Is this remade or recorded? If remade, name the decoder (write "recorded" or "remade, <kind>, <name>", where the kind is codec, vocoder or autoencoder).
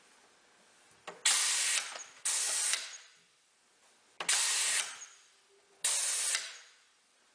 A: recorded